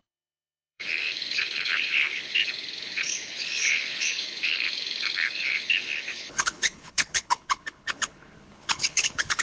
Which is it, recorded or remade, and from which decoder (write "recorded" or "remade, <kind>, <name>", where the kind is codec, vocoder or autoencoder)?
remade, codec, HILCodec